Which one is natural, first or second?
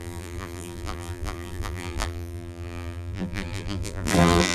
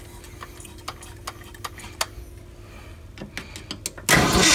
second